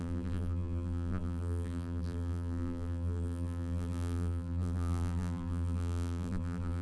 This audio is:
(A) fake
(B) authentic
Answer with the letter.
A